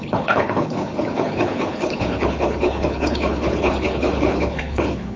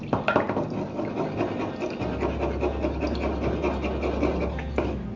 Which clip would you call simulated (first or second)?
first